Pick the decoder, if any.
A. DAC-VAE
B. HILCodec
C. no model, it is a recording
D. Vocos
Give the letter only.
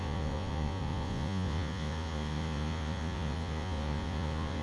D